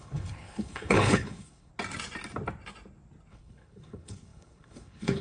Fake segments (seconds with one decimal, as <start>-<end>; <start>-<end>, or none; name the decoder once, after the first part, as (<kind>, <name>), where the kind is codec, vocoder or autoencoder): 0.0-1.7 (codec, HILCodec); 3.3-5.2